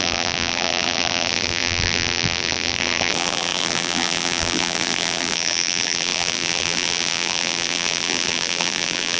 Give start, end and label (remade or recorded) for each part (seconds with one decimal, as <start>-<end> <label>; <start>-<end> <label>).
0.0-9.2 remade